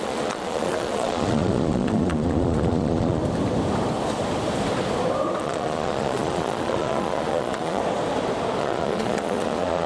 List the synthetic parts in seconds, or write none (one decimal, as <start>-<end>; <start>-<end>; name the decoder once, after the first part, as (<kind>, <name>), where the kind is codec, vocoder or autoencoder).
0.0-3.2 (vocoder, Vocos); 5.4-7.8; 8.6-9.9